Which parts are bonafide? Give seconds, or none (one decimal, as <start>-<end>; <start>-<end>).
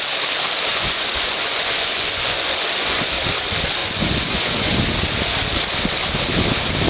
0.0-0.7; 3.2-3.8; 4.8-6.9